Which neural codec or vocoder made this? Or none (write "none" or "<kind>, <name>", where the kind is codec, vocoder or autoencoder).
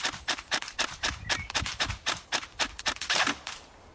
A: vocoder, BigVGAN v2